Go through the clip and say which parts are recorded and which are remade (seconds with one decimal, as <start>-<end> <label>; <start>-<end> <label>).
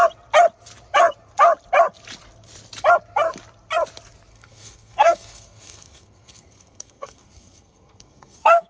0.0-4.3 recorded; 4.3-8.7 remade